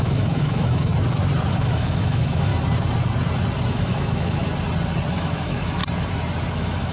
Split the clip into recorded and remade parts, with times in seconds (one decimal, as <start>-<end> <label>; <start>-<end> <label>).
0.0-0.9 remade; 0.9-1.5 recorded; 1.5-2.5 remade; 2.5-3.7 recorded; 3.7-4.4 remade; 4.4-5.1 recorded; 5.1-5.8 remade; 5.8-6.5 recorded; 6.5-6.9 remade